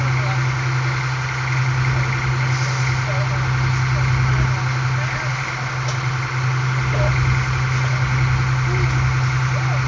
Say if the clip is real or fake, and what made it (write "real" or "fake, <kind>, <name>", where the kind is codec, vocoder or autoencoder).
real